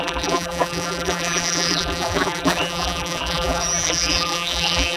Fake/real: fake